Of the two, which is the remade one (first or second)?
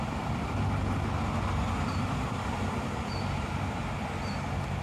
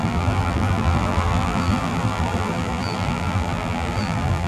second